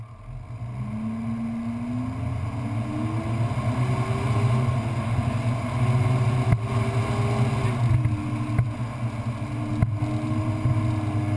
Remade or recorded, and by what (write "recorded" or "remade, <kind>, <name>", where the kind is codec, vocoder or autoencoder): recorded